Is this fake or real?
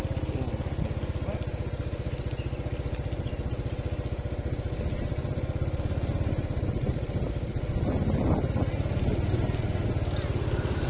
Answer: real